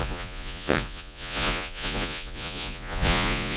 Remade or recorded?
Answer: remade